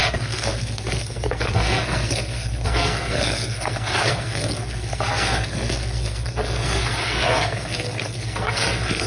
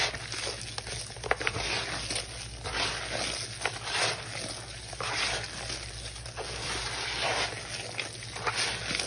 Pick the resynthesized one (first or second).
first